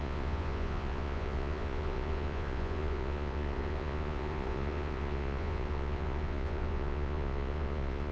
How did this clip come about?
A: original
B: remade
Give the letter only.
B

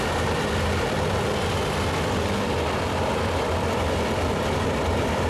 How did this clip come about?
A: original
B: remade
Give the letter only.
B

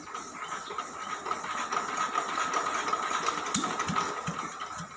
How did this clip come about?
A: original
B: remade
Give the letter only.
A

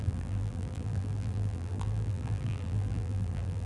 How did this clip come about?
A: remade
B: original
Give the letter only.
A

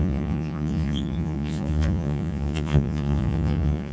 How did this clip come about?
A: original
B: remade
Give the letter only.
B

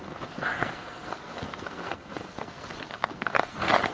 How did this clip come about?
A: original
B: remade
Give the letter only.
B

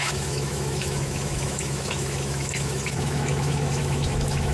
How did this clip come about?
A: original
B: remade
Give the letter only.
B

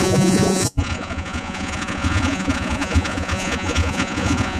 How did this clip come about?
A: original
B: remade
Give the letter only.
B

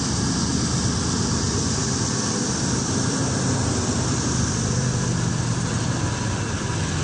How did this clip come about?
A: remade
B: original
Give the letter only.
A